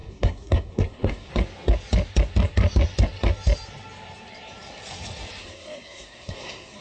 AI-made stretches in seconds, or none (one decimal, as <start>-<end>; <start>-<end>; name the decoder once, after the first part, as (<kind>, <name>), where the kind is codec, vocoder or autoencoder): 0.0-1.3 (codec, SNAC); 5.4-6.8